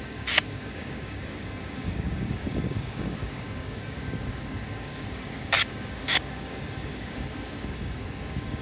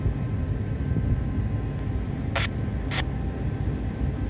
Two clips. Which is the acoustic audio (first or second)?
second